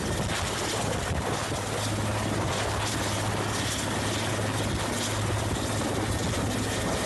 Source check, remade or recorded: recorded